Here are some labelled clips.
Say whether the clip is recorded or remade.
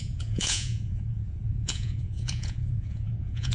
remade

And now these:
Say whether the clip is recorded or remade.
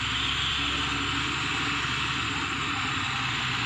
recorded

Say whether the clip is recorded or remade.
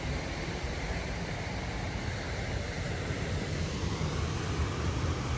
recorded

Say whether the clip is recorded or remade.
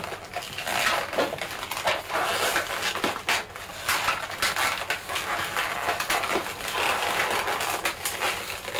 recorded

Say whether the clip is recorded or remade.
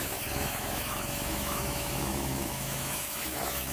remade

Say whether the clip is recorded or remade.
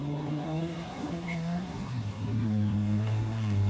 remade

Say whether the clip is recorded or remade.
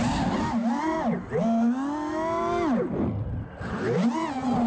recorded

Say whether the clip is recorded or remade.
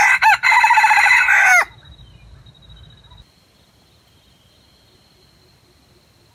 recorded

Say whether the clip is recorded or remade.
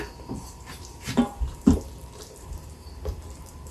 remade